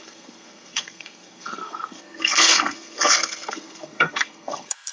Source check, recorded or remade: remade